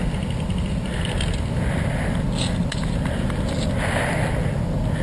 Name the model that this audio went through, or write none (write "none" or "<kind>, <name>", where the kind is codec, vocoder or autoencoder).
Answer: none